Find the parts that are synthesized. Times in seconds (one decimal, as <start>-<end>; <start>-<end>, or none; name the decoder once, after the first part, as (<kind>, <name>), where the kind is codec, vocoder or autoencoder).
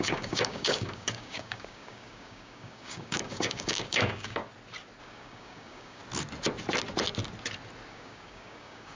0.0-4.4 (codec, DAC); 5.0-6.0; 7.9-9.0